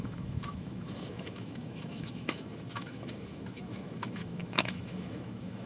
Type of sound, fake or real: fake